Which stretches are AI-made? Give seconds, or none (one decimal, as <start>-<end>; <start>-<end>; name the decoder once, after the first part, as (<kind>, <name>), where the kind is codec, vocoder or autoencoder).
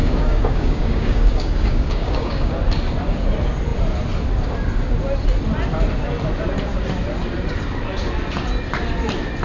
0.0-2.5 (codec, DAC)